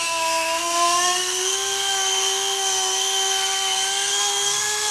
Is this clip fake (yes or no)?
yes